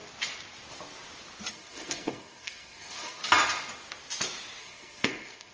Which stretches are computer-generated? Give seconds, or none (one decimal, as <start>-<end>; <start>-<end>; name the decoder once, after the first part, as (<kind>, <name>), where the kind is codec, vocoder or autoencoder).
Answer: 1.5-3.2 (codec, SNAC); 4.6-5.5